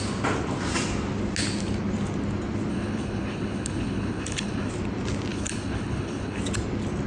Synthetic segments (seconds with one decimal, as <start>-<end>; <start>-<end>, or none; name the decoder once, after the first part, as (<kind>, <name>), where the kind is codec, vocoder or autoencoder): 2.7-4.7 (codec, HILCodec); 5.3-6.4